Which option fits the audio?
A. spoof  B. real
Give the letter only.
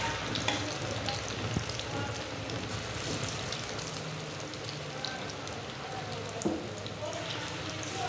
B